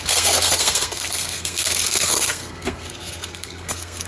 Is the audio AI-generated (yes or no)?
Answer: yes